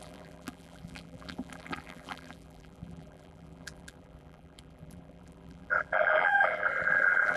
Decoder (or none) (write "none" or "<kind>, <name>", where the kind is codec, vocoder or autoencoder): vocoder, BigVGAN v2